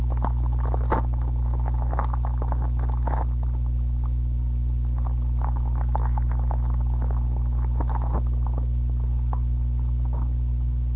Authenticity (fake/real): real